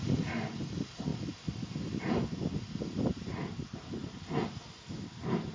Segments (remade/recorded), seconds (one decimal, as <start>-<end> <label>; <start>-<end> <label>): 0.0-5.5 recorded